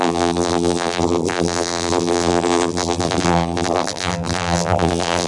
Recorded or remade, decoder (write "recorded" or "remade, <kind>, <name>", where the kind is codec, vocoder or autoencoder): remade, vocoder, BigVGAN v2